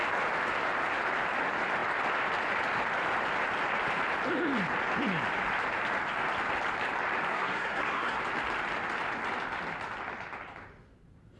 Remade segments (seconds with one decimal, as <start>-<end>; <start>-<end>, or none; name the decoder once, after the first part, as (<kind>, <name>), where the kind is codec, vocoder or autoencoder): 7.3-8.2 (codec, SNAC)